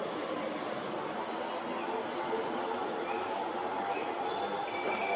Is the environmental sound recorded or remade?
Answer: recorded